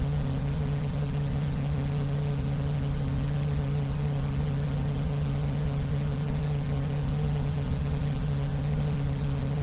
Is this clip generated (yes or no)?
yes